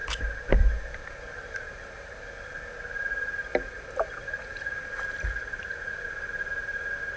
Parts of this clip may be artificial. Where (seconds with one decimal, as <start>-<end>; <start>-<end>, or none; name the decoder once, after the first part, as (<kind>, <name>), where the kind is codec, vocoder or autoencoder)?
none